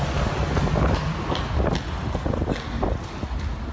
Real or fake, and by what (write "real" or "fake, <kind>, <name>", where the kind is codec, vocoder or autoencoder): real